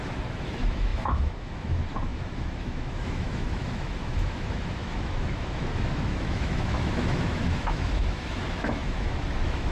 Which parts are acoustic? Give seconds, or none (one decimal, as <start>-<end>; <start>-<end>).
none